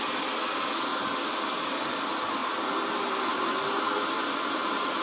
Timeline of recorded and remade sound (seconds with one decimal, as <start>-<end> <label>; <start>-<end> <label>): 0.0-5.0 recorded